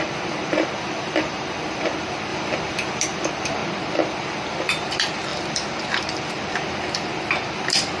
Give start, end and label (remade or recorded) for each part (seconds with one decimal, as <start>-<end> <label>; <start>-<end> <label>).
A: 0.0-8.0 remade